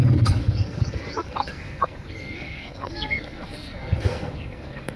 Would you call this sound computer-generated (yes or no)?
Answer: yes